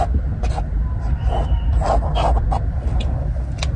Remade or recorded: recorded